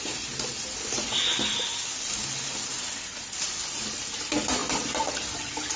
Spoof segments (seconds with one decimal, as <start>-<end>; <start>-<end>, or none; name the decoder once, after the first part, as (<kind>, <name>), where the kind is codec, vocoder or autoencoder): none